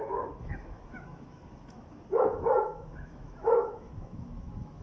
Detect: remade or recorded remade